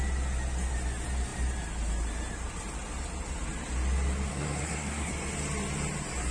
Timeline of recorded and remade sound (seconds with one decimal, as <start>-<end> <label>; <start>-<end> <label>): 0.0-4.3 recorded; 4.3-5.1 remade; 5.1-6.3 recorded